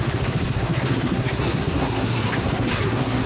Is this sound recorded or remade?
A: remade